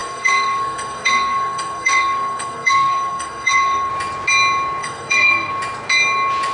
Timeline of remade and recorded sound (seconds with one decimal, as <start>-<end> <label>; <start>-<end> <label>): 0.0-3.9 remade; 3.9-4.8 recorded; 4.8-5.5 remade; 5.5-6.5 recorded